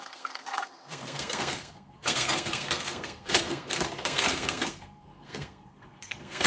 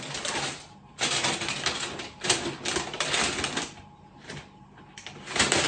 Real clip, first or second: second